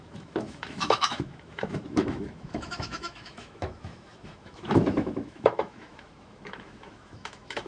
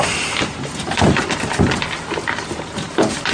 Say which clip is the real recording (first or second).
second